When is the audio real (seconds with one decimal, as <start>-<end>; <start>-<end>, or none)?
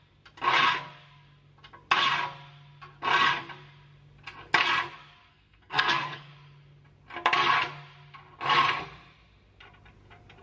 0.0-5.3; 6.3-10.4